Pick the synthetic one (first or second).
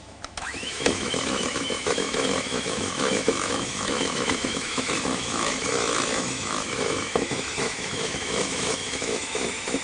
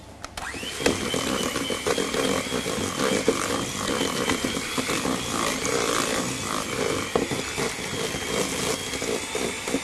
first